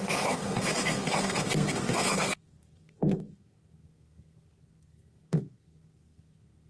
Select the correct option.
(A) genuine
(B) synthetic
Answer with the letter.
B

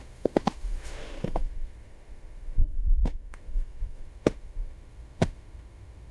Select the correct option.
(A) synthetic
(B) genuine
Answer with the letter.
A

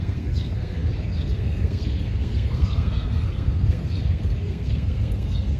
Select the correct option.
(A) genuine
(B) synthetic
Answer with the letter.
B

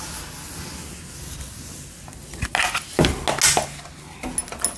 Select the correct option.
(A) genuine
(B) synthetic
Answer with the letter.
A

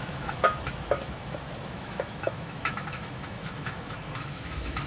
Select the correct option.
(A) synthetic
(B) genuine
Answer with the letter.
A